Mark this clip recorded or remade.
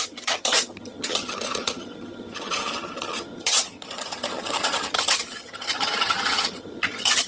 remade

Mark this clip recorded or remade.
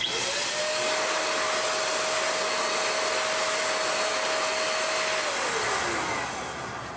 recorded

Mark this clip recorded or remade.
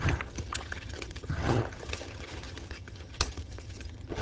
remade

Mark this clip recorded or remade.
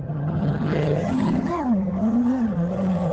remade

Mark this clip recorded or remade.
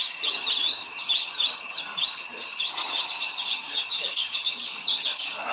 remade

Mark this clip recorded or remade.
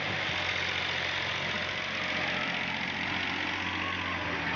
recorded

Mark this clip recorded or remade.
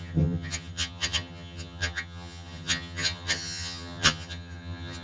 remade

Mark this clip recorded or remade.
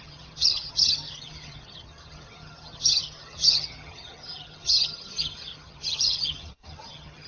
remade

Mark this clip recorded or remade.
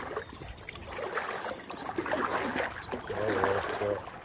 recorded